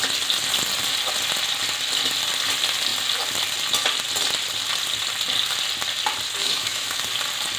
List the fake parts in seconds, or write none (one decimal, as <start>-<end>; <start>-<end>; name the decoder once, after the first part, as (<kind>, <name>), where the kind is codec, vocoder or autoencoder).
6.4-7.0 (autoencoder, DAC-VAE)